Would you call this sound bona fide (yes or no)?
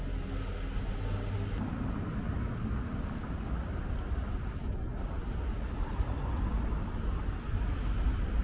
yes